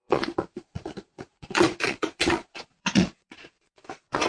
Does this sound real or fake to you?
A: fake